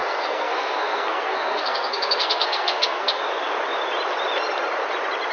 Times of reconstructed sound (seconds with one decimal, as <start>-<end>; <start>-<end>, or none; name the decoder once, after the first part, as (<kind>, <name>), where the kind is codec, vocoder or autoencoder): 0.0-3.2 (codec, SNAC)